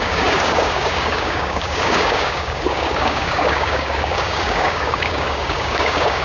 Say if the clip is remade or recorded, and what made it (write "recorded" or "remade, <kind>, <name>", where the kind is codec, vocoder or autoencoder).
remade, codec, DAC